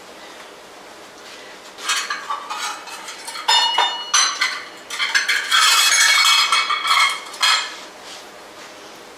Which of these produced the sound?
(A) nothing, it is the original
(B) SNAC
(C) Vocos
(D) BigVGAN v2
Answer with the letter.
A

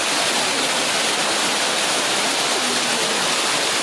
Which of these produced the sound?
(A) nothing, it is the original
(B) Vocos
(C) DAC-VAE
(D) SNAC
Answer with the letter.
A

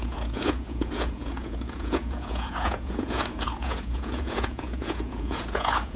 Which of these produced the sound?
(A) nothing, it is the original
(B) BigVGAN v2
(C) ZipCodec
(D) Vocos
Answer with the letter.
D